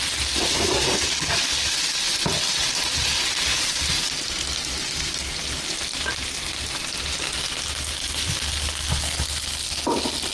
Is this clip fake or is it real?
real